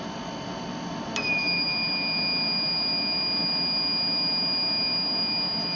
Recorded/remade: recorded